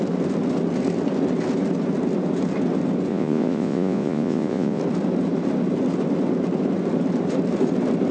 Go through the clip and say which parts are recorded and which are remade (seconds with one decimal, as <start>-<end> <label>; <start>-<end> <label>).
0.0-3.1 recorded; 3.1-4.8 remade; 4.8-8.1 recorded